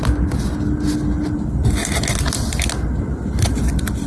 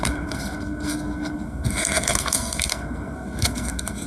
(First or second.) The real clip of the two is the first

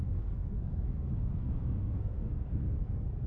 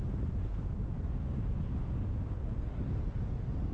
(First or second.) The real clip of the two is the second